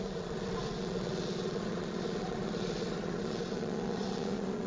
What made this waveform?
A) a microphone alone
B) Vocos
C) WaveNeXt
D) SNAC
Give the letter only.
B